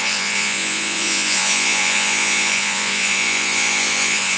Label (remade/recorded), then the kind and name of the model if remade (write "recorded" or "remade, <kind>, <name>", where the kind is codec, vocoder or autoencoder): remade, vocoder, Vocos